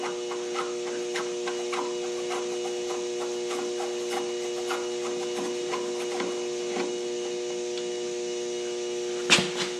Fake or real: real